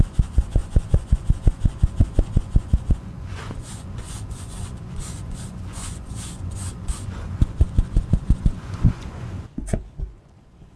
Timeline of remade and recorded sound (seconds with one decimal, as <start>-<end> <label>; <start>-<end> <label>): 0.0-10.8 remade